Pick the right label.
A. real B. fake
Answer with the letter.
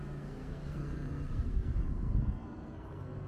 B